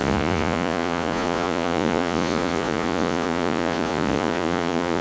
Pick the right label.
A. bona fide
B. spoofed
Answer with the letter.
B